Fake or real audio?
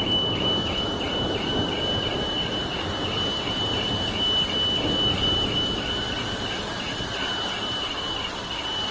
real